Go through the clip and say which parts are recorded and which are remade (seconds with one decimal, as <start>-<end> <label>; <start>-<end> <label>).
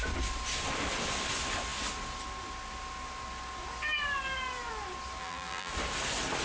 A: 0.0-5.2 recorded; 5.2-5.7 remade; 5.7-6.4 recorded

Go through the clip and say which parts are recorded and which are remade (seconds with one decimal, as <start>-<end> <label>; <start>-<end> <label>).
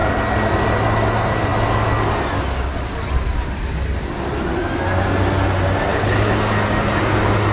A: 0.0-5.9 recorded; 5.9-6.4 remade; 6.4-7.5 recorded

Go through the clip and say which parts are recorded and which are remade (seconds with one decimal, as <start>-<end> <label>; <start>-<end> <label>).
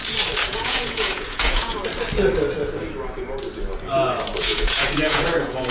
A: 0.0-0.5 recorded; 0.5-1.8 remade; 1.8-4.4 recorded; 4.4-5.7 remade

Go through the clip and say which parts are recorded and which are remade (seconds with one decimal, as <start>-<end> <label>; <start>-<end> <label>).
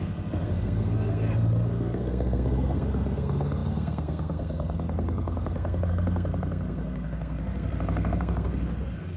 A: 0.0-9.2 remade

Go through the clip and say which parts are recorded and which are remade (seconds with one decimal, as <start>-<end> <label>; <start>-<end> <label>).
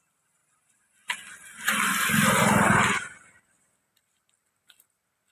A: 0.0-5.3 recorded